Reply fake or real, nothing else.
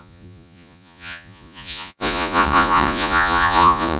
fake